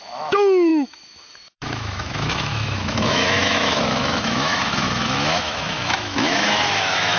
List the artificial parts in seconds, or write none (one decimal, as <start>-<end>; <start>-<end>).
0.0-7.2